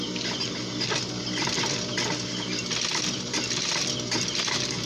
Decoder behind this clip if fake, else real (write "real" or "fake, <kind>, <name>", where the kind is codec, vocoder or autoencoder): real